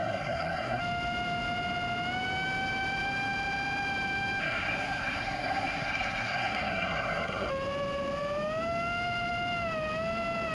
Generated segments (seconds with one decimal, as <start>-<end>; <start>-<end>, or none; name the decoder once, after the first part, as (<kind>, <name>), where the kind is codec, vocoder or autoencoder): 0.0-0.8 (codec, SNAC); 4.4-7.5